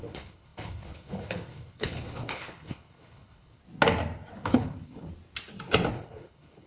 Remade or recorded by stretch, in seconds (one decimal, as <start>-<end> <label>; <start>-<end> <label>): 0.0-3.6 remade; 3.6-4.3 recorded; 4.3-5.1 remade; 5.1-5.9 recorded; 5.9-6.7 remade